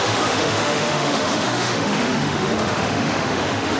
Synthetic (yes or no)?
yes